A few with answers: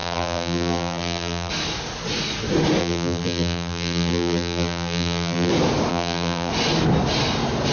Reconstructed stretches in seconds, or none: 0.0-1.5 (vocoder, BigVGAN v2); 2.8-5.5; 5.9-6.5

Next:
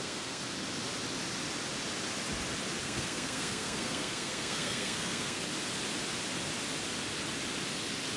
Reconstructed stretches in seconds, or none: 0.0-0.4 (codec, SNAC); 2.8-5.4

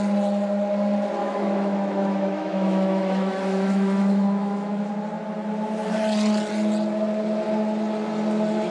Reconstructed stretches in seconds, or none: 1.2-4.9 (autoencoder, DAC-VAE)

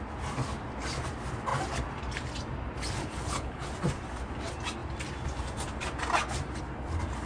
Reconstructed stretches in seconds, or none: 3.0-3.7 (codec, HILCodec)